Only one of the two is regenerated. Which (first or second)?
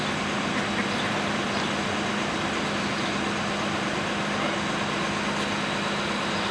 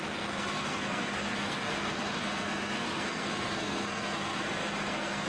second